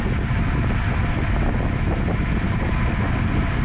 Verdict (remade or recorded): recorded